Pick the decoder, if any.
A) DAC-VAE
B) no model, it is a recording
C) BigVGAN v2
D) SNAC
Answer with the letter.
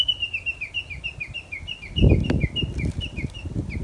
B